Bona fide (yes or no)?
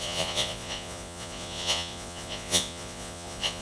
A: no